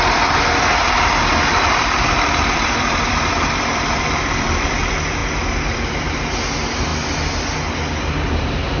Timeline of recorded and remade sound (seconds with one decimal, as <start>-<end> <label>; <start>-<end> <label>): 0.0-1.5 recorded; 1.5-4.7 remade; 4.7-5.2 recorded; 5.2-6.2 remade; 6.2-8.8 recorded